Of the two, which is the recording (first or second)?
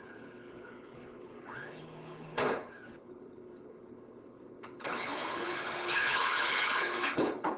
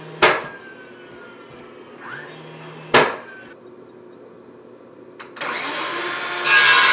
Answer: second